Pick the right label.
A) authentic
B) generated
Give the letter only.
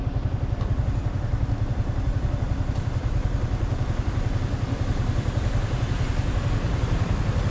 A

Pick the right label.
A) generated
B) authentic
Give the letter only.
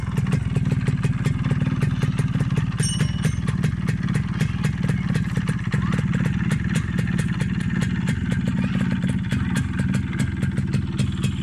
B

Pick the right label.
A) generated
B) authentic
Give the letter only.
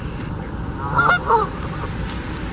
A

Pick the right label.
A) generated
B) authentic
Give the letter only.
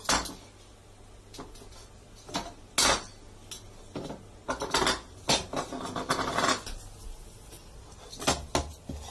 B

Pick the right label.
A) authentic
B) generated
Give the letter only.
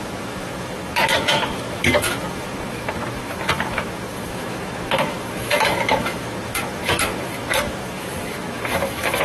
B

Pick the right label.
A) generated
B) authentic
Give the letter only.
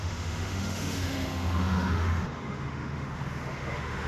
A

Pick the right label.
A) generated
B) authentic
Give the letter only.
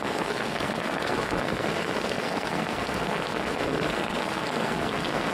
A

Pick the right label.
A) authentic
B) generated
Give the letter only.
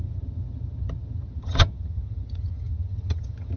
B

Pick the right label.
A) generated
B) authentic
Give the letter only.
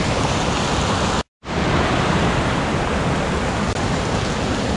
B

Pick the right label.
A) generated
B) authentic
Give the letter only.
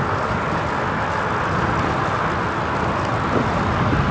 B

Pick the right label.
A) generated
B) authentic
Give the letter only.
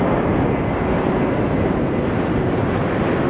B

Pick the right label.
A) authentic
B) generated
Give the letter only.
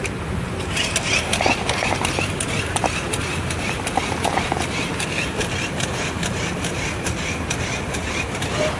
B